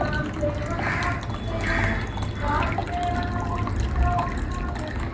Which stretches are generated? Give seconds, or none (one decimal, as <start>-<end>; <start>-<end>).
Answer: none